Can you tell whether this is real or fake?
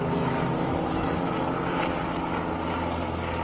real